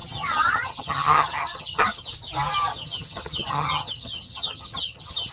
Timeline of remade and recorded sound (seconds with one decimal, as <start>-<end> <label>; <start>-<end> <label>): 0.0-2.1 remade; 2.1-2.7 recorded; 2.7-5.3 remade